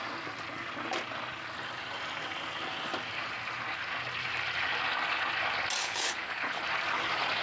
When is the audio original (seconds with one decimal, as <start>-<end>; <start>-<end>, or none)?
0.0-5.8; 6.6-7.4

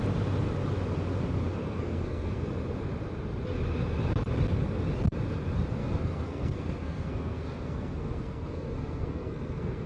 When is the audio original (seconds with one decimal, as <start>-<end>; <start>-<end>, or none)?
0.0-1.6; 2.5-5.8

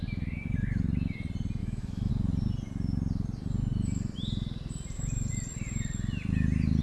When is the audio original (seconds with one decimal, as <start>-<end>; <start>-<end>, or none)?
0.0-1.6; 2.1-6.8

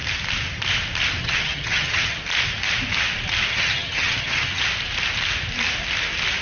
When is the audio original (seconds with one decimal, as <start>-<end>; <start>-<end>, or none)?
0.0-1.2; 2.2-3.5; 4.6-6.4

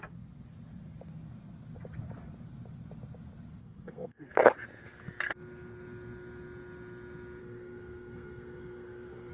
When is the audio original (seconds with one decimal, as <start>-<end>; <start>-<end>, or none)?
0.0-3.6; 4.3-7.4

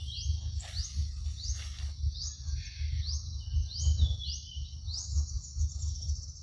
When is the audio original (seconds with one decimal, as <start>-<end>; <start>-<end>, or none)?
0.0-6.4

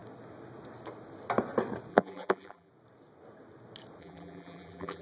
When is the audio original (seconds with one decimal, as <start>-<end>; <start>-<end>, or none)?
0.0-1.9; 2.7-4.0